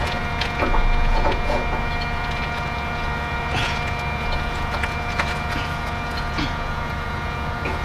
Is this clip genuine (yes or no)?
no